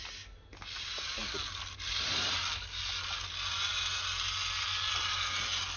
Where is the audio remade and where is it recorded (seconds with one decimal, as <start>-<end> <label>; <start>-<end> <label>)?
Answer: 0.0-5.8 recorded